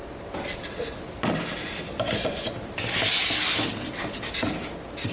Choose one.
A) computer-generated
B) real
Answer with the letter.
B